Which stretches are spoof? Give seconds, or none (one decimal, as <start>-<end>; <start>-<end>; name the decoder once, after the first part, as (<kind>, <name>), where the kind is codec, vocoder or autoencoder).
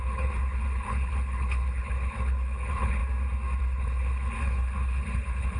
0.0-3.0 (codec, HILCodec); 3.6-5.6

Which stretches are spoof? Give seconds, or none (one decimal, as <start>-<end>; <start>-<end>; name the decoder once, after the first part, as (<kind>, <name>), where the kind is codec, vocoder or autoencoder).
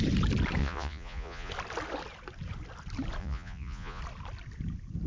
0.6-1.5 (vocoder, Vocos); 3.2-4.0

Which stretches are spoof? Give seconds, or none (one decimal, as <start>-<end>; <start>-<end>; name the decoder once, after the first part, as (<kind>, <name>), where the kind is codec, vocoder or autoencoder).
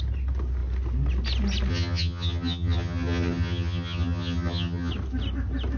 1.7-4.9 (vocoder, HiFi-GAN)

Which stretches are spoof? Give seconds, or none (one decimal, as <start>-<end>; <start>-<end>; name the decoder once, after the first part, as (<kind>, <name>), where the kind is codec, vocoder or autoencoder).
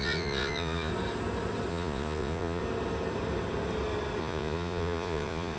0.0-0.9 (vocoder, Vocos); 1.7-2.6; 4.2-5.6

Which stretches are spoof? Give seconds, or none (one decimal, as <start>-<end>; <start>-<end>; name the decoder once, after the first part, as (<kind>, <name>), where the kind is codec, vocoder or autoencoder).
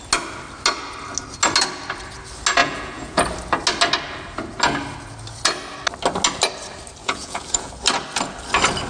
2.6-3.2 (vocoder, Vocos); 7.0-7.7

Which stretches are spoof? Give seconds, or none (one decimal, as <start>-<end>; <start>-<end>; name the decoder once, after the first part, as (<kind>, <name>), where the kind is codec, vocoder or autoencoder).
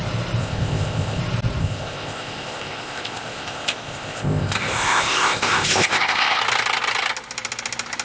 0.4-1.2 (codec, ZipCodec); 1.6-6.4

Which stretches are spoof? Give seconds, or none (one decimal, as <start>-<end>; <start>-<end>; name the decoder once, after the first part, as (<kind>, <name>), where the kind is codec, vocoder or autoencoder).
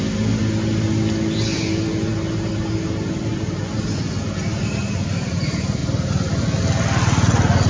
none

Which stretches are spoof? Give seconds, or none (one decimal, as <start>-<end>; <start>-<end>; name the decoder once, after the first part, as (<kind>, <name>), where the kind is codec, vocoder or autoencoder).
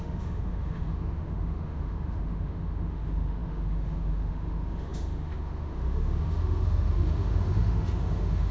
0.0-8.5 (autoencoder, DAC-VAE)